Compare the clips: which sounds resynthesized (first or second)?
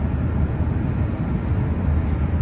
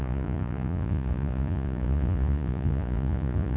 second